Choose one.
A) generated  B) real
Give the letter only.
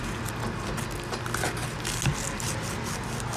B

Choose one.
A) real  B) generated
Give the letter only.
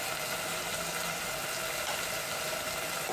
A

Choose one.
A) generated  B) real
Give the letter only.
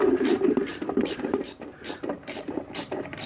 A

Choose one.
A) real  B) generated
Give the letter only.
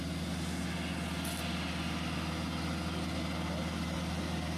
A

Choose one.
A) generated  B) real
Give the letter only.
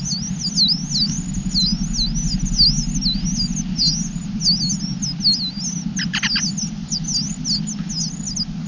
B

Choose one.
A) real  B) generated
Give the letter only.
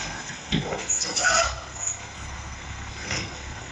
B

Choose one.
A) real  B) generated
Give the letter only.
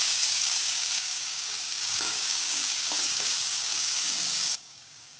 B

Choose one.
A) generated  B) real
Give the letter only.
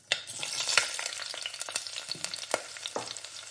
B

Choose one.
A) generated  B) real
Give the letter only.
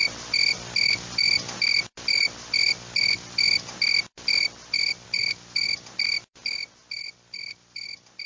A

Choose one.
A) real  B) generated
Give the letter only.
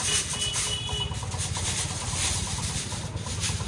A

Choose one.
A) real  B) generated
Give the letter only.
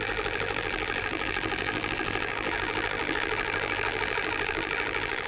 B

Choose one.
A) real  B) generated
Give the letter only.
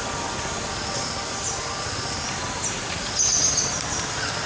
A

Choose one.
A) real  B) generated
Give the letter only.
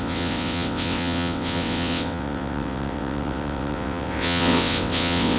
B